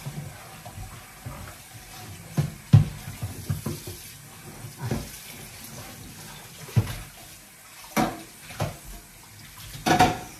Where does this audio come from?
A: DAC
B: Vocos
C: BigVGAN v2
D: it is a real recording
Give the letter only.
D